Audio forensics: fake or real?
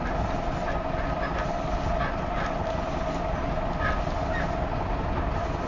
real